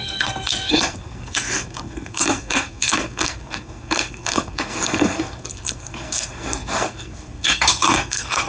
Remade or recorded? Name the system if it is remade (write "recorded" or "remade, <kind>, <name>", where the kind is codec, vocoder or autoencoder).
remade, codec, SNAC